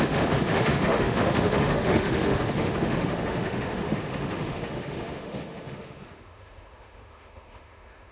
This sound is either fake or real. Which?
fake